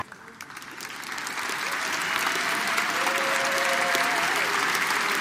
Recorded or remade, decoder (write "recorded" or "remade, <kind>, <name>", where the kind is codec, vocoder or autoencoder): recorded